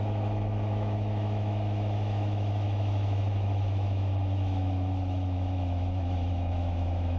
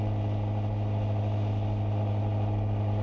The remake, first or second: first